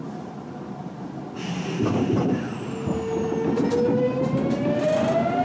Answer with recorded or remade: recorded